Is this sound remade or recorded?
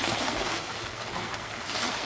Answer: remade